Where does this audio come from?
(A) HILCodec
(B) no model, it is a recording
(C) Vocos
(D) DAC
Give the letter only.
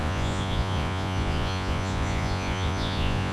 C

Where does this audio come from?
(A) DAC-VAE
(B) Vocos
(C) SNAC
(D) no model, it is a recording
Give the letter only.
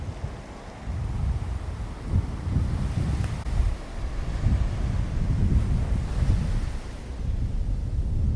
D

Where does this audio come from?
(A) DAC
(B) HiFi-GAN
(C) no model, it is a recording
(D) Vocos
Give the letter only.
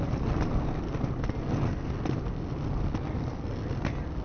C